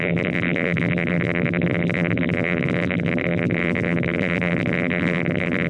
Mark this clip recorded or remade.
remade